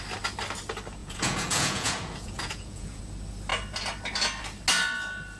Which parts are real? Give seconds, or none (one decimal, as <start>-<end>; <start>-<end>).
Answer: 0.0-1.0; 3.0-5.4